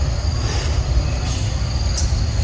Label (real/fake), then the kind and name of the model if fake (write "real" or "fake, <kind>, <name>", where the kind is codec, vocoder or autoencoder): real